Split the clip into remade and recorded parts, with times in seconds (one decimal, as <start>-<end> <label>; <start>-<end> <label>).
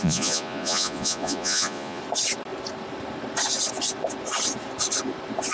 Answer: 0.0-2.0 remade; 2.0-5.5 recorded